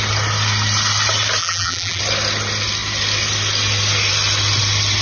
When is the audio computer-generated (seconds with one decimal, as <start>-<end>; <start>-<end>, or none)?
1.4-2.0